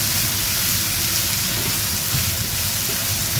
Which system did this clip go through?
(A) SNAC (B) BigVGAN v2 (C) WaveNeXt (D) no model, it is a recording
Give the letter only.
D